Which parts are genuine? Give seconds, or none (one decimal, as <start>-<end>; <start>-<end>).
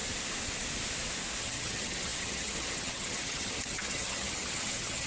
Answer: 0.0-1.4